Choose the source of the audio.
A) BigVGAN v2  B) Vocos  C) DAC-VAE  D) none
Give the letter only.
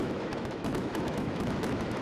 C